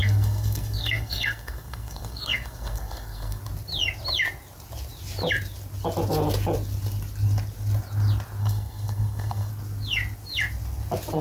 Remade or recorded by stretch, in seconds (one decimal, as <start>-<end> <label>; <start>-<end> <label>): 0.0-3.4 remade; 3.4-8.4 recorded; 8.4-9.5 remade; 9.5-11.2 recorded